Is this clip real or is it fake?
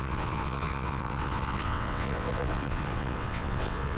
fake